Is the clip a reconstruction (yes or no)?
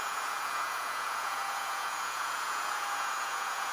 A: yes